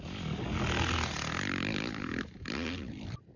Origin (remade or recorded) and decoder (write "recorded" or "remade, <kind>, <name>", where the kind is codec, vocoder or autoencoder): recorded